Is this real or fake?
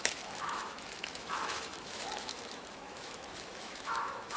fake